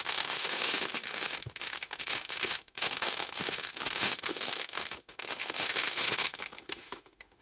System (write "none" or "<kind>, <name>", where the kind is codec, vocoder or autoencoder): autoencoder, DAC-VAE